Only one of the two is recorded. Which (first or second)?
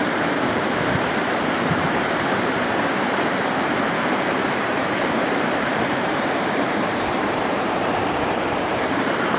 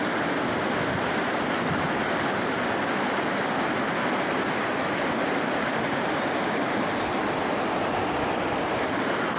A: second